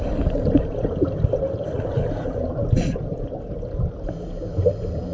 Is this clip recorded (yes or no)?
yes